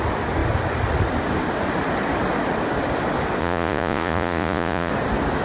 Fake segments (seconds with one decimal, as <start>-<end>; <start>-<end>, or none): 3.4-4.9